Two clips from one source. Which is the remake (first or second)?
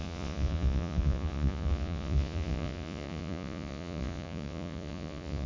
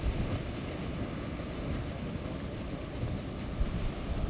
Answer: first